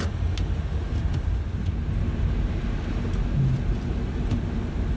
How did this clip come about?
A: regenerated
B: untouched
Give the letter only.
B